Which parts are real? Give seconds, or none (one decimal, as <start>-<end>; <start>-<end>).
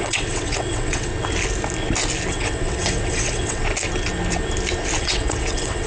1.1-2.3; 3.6-5.0